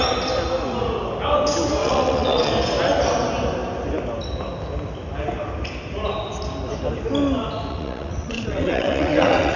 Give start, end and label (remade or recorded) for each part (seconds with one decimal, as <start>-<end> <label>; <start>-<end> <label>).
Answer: 0.0-1.8 recorded; 1.8-2.5 remade; 2.5-7.7 recorded; 7.7-9.6 remade